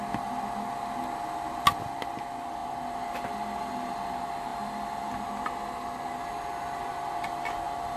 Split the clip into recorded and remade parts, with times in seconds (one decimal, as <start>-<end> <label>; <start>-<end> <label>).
0.0-8.0 recorded

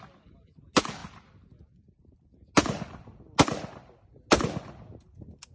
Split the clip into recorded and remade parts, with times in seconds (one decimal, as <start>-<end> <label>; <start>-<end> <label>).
0.0-5.5 recorded

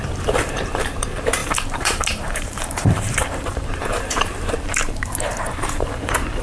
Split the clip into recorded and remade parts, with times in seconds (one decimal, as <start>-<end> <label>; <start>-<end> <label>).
0.0-6.4 remade